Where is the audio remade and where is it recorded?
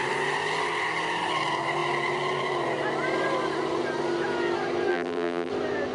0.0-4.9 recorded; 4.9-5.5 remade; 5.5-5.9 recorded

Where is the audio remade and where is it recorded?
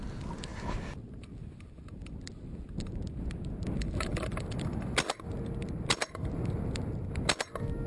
0.0-4.1 recorded; 4.1-4.8 remade; 4.8-7.9 recorded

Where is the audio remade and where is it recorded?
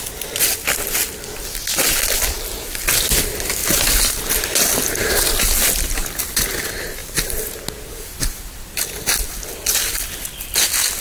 0.0-7.0 recorded; 7.0-7.6 remade; 7.6-11.0 recorded